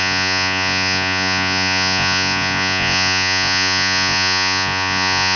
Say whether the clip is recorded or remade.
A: remade